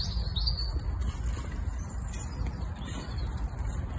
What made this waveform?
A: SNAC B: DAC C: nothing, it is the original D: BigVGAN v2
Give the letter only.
C